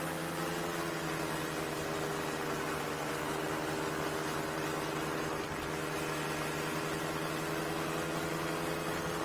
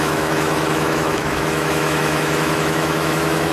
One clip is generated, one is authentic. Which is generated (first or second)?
second